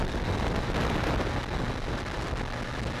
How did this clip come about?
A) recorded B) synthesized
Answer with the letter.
A